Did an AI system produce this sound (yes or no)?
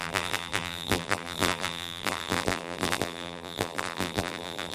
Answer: yes